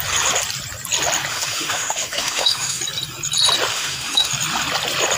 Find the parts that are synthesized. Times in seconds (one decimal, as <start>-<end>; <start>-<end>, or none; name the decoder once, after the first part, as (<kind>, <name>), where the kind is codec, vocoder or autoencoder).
1.3-2.8 (autoencoder, DAC-VAE); 3.7-4.3